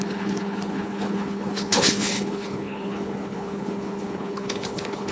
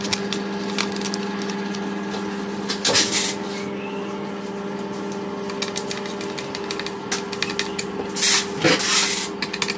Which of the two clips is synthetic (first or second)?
first